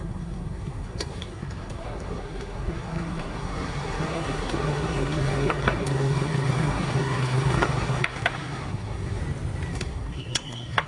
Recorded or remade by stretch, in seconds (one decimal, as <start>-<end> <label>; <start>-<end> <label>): 0.0-9.2 remade; 9.2-9.7 recorded; 9.7-10.9 remade